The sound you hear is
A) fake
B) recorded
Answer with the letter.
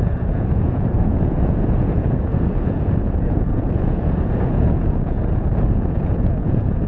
A